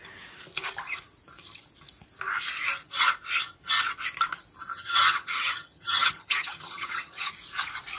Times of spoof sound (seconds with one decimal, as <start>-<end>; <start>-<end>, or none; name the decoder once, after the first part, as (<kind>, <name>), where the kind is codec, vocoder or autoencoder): 4.7-7.3 (vocoder, HiFi-GAN)